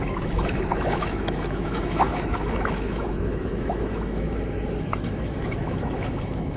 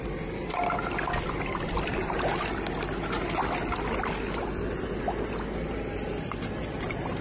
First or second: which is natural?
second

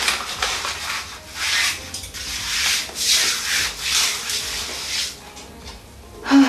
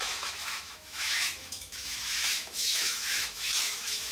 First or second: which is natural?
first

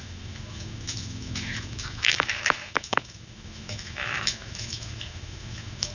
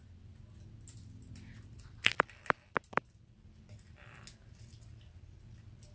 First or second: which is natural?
second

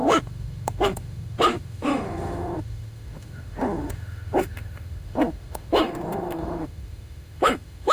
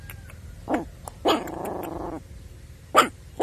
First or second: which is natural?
second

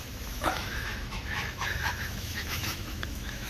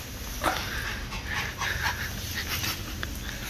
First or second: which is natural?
second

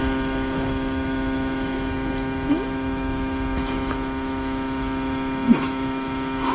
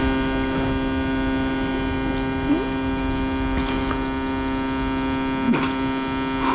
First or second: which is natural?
second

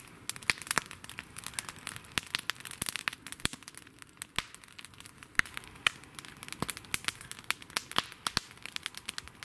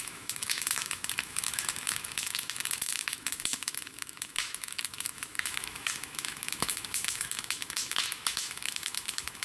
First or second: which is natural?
first